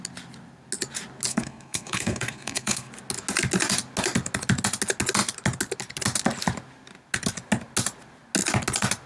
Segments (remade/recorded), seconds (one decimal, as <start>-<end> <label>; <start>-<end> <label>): 0.0-1.3 recorded; 1.3-2.9 remade; 2.9-9.1 recorded